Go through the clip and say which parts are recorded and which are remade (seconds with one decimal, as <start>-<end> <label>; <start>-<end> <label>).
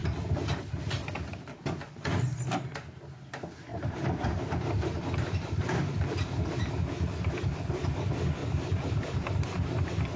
0.0-3.7 recorded; 3.7-6.7 remade; 6.7-8.4 recorded; 8.4-10.2 remade